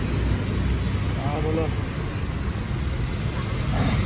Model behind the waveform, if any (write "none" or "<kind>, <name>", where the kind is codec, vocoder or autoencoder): none